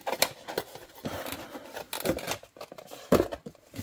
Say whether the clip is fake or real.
real